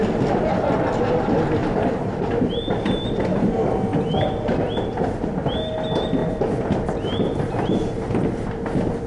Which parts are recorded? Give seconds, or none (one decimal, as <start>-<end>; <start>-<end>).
0.0-1.6; 2.1-6.2; 6.9-9.1